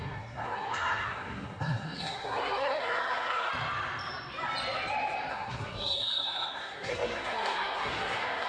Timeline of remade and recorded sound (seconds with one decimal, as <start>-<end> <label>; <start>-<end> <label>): 0.0-3.5 remade; 3.5-5.3 recorded; 5.3-8.5 remade